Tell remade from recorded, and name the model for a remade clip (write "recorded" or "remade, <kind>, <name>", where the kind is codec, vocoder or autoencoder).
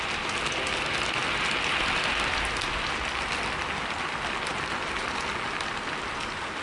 recorded